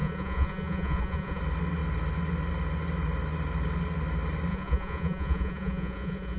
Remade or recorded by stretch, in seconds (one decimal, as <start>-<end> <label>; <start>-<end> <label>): 0.0-1.4 remade; 1.4-4.5 recorded; 4.5-6.4 remade